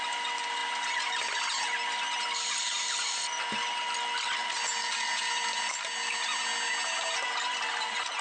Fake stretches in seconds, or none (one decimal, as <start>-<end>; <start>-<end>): none